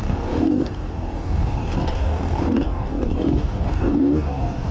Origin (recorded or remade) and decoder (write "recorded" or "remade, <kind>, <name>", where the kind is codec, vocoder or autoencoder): remade, codec, DAC